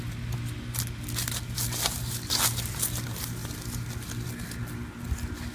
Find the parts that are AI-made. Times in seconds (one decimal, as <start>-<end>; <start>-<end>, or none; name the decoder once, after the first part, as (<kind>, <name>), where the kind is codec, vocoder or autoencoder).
none